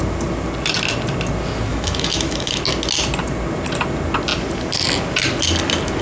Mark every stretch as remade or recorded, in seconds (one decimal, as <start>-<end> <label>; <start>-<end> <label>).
0.0-1.7 recorded; 1.7-2.6 remade; 2.6-6.0 recorded